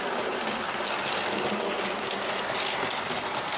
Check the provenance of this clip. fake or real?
real